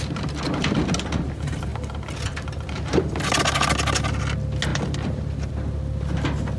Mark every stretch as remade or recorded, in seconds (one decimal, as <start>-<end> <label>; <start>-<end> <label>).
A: 0.0-1.7 recorded; 1.7-4.2 remade; 4.2-4.7 recorded; 4.7-5.5 remade; 5.5-6.6 recorded